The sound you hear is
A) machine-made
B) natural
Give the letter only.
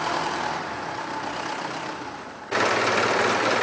B